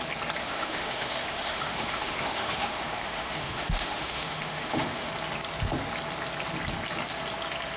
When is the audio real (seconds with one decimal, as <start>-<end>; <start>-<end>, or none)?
0.0-0.4; 5.1-7.8